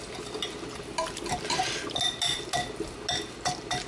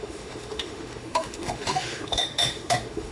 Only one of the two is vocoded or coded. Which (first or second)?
second